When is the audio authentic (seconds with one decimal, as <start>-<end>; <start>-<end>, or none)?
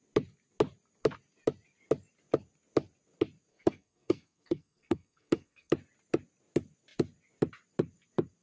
0.0-3.5; 5.7-8.4